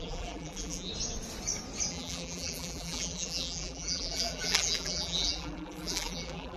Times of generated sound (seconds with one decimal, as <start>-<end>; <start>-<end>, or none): 0.0-0.9; 1.9-6.6